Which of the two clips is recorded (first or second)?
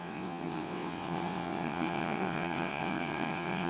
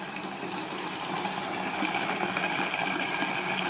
second